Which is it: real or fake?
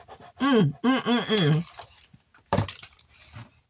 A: real